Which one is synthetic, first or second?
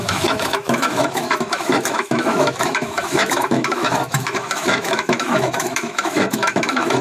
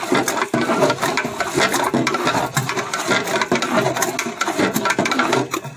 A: first